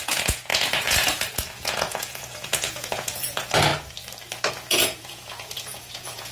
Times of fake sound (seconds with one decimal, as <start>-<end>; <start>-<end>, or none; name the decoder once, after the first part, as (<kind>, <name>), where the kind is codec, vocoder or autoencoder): 0.0-3.7 (vocoder, Vocos); 4.5-6.3